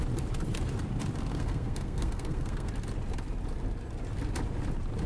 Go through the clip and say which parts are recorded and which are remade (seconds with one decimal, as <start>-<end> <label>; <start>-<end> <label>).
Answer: 0.0-1.3 recorded; 1.3-2.7 remade; 2.7-5.1 recorded